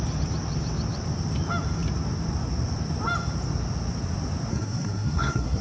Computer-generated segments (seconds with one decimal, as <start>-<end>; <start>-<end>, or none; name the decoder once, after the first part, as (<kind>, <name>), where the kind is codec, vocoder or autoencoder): 4.5-5.6 (codec, SNAC)